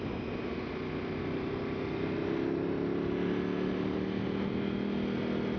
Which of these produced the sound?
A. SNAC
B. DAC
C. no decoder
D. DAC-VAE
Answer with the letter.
C